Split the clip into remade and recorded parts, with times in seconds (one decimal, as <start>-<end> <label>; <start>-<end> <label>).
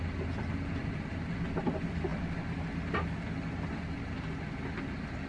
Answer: 0.0-5.3 recorded